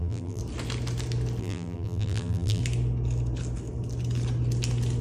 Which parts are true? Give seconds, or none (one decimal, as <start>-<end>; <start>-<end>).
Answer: 0.4-1.4; 2.6-5.0

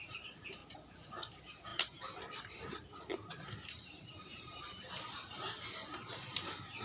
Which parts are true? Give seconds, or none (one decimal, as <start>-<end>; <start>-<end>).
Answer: 0.6-1.1

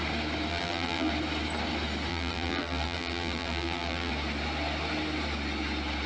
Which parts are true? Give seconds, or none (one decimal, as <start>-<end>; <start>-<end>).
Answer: 0.0-0.5; 1.1-2.1; 4.1-6.1